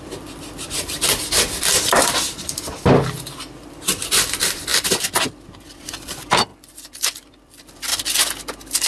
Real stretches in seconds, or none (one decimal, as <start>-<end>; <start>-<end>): 4.7-5.6; 7.9-8.9